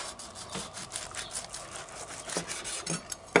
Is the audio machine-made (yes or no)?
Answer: no